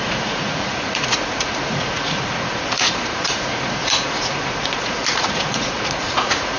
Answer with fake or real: fake